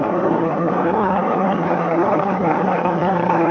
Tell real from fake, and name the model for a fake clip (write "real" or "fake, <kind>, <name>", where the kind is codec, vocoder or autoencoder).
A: fake, codec, SNAC